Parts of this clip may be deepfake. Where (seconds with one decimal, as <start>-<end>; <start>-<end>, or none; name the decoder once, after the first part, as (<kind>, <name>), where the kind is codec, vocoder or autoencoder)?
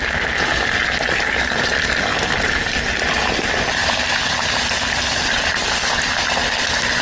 3.8-5.0 (vocoder, BigVGAN v2)